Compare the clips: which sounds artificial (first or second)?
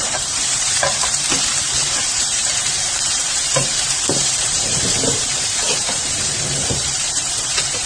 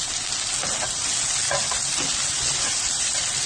first